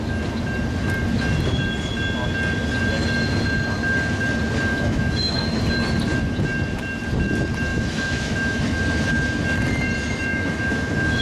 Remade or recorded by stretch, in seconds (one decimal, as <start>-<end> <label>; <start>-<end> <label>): 0.0-4.7 recorded; 4.7-5.6 remade; 5.6-7.7 recorded; 7.7-8.8 remade; 8.8-10.3 recorded; 10.3-11.2 remade